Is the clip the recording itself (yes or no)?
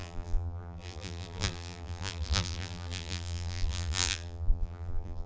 no